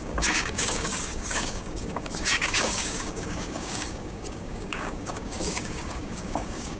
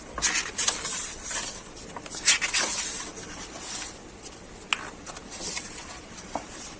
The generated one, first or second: first